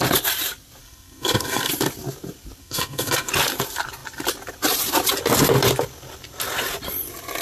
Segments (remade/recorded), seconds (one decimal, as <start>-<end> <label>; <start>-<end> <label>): 0.0-0.8 recorded; 0.8-1.7 remade; 1.7-2.6 recorded; 2.6-3.3 remade; 3.3-7.4 recorded

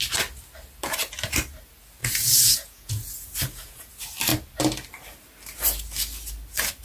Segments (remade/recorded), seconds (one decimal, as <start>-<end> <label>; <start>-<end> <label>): 0.0-2.0 recorded; 2.0-3.9 remade; 3.9-6.8 recorded

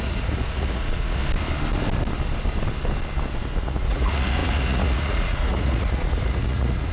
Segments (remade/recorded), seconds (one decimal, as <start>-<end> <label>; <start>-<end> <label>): 0.0-1.2 remade; 1.2-3.6 recorded; 3.6-6.9 remade

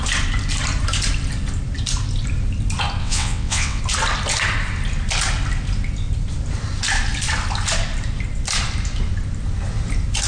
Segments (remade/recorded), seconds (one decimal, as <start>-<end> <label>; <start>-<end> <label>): 0.0-3.0 recorded; 3.0-3.8 remade; 3.8-10.3 recorded

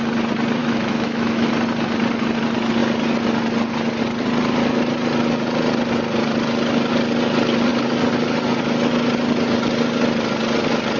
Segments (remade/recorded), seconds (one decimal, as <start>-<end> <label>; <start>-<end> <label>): 0.0-0.6 recorded; 0.6-1.5 remade; 1.5-11.0 recorded

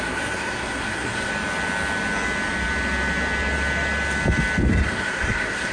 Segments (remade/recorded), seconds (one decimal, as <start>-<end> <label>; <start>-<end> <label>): 0.0-1.3 remade; 1.3-4.7 recorded; 4.7-5.7 remade

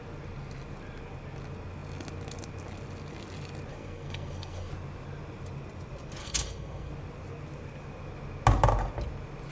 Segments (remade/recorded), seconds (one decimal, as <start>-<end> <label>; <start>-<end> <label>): 0.0-3.7 recorded; 3.7-4.7 remade; 4.7-6.2 recorded; 6.2-6.9 remade; 6.9-9.5 recorded

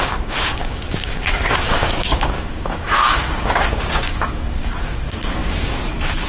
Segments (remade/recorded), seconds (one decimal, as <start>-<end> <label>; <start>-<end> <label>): 0.0-6.3 remade